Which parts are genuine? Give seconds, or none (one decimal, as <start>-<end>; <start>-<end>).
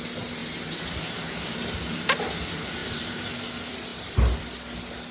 0.0-0.4; 1.6-2.8; 3.3-3.9; 4.5-5.1